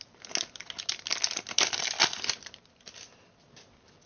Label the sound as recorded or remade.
recorded